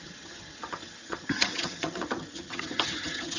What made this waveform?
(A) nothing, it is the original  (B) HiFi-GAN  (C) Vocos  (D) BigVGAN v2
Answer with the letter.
B